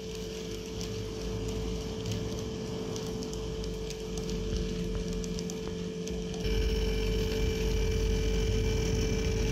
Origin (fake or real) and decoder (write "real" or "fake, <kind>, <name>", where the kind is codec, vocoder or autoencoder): real